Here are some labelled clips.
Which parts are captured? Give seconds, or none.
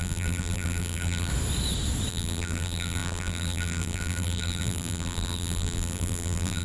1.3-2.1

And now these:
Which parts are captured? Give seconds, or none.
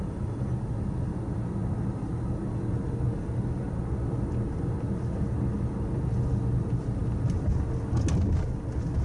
0.0-9.0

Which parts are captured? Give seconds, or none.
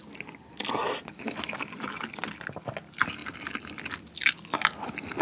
0.0-5.2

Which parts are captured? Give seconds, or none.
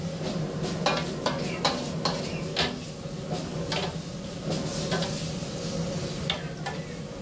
0.0-7.2